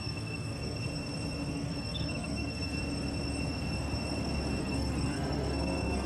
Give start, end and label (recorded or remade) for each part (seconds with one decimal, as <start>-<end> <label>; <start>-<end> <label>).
0.0-0.8 remade; 0.8-1.5 recorded; 1.5-2.8 remade; 2.8-4.6 recorded; 4.6-6.1 remade

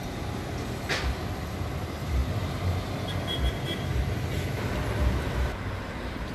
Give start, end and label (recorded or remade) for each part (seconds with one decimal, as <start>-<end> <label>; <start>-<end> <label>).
0.0-6.3 recorded

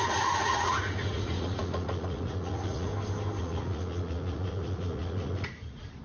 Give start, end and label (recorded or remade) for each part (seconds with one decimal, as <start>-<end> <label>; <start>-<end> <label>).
0.0-2.9 remade; 2.9-3.4 recorded; 3.4-6.0 remade

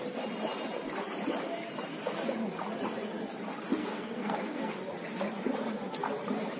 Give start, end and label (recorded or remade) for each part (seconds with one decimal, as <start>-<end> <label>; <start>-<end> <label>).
0.0-3.8 recorded; 3.8-4.7 remade; 4.7-6.6 recorded